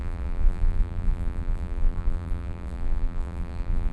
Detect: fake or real fake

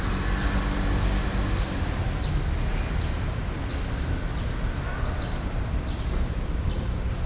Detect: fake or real real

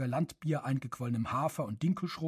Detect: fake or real real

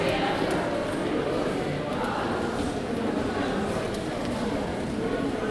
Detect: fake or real real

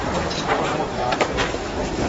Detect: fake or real fake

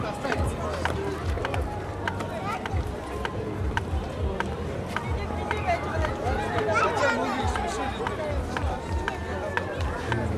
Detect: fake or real real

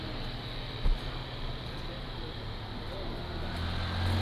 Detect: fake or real real